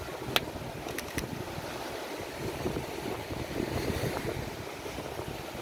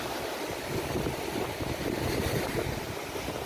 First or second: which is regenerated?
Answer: second